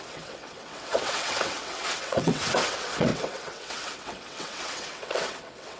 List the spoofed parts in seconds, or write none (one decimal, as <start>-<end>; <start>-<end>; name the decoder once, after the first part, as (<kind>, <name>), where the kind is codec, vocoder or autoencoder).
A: 0.0-5.8 (vocoder, WaveNeXt)